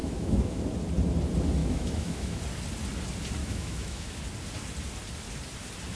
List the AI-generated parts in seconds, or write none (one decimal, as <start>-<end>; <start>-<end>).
0.0-0.6; 1.6-2.4; 3.4-4.2